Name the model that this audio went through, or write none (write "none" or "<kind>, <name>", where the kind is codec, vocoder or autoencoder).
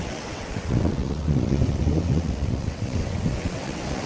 vocoder, WaveNeXt